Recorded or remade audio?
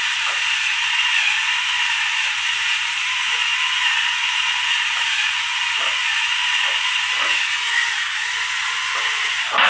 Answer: recorded